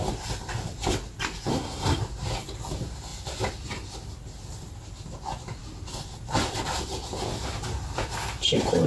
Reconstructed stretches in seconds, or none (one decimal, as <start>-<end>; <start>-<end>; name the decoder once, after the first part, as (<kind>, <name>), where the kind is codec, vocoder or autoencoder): 1.5-2.0 (codec, SNAC)